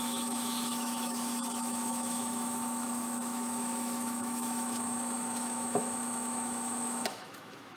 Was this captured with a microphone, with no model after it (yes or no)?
no